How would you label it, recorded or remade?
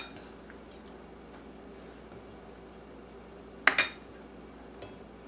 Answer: recorded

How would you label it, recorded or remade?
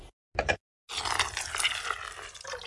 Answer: recorded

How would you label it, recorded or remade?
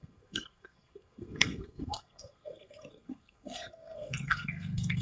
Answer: remade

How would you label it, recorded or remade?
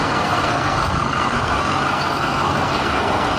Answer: remade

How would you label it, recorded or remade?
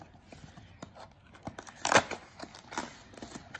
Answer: recorded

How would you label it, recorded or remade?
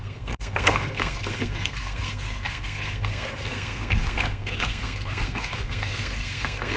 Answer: remade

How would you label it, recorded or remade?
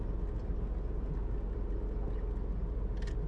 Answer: recorded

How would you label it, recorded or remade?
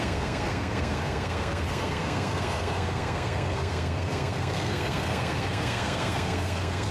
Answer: remade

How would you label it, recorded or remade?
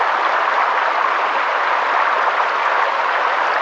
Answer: recorded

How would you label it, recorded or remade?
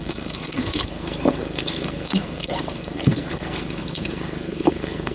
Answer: remade